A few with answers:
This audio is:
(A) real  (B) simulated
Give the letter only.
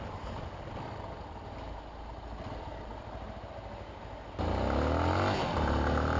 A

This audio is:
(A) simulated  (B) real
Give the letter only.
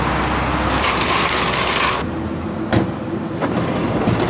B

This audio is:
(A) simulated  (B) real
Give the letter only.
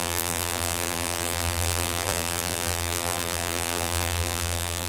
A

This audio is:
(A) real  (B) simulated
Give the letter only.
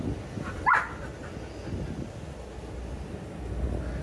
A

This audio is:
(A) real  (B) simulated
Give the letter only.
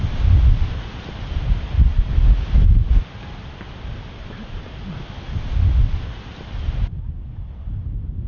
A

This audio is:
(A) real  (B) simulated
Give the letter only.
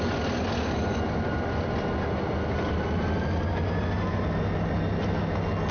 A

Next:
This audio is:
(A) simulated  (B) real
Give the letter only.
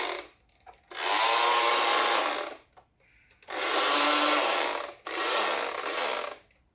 B